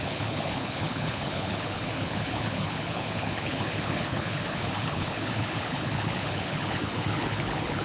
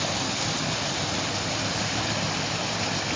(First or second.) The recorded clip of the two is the second